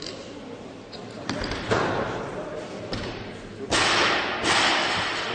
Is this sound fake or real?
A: real